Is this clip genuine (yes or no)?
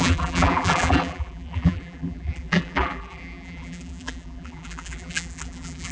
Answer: no